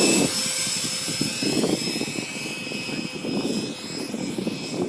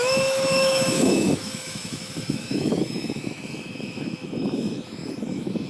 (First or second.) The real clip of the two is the first